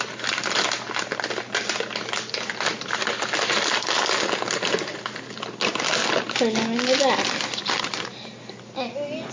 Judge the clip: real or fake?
real